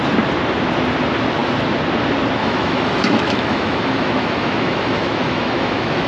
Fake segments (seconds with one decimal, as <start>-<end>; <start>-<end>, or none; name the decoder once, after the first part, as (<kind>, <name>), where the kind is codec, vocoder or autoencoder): 2.4-6.1 (autoencoder, DAC-VAE)

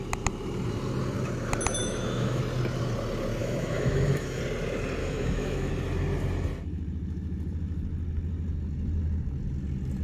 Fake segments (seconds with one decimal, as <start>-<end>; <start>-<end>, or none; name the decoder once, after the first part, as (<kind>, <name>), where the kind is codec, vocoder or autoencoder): 1.8-2.4 (autoencoder, DAC-VAE); 3.4-4.4; 5.0-5.7

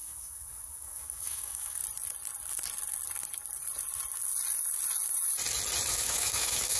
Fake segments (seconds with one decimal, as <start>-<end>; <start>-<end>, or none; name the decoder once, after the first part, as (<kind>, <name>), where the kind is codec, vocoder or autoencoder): 0.0-1.8 (autoencoder, DAC-VAE); 5.9-6.8

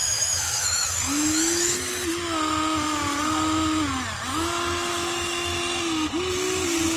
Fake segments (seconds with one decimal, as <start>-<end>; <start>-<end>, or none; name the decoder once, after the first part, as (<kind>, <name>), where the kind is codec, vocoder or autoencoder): 0.0-1.9 (autoencoder, DAC-VAE); 4.9-5.6